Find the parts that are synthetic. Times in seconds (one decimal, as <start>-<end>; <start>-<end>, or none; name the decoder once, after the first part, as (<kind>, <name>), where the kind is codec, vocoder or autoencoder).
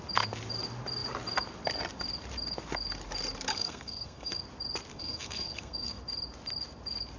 3.5-4.4 (codec, SNAC); 4.9-6.0